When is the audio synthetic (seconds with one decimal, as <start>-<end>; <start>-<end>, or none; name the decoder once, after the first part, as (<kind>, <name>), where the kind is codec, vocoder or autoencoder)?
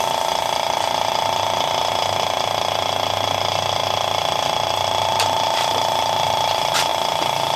none